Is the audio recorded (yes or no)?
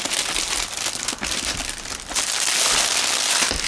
yes